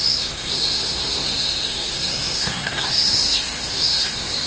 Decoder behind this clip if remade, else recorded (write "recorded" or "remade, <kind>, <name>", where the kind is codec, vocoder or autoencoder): remade, codec, SNAC